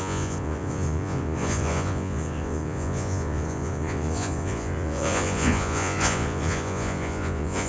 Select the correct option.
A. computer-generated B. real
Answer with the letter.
A